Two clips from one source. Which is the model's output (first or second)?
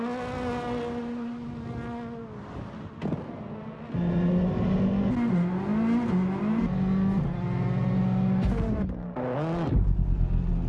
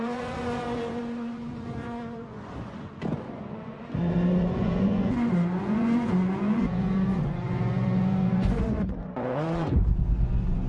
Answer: second